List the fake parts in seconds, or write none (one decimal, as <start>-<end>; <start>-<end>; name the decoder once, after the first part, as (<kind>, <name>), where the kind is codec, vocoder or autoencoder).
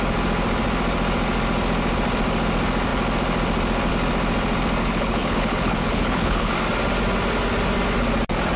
4.8-6.5 (codec, HILCodec)